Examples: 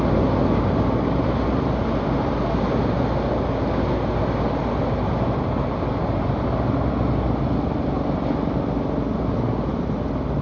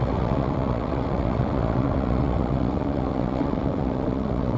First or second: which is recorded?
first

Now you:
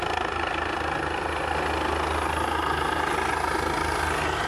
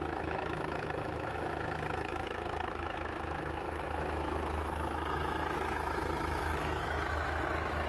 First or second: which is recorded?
first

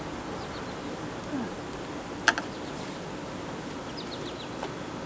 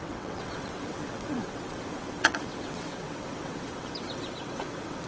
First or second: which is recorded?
first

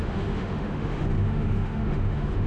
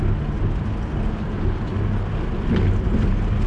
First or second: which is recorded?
second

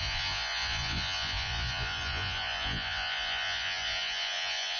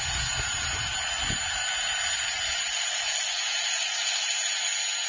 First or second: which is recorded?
second